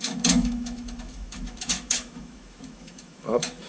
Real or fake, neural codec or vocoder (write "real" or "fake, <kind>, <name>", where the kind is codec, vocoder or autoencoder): fake, autoencoder, DAC-VAE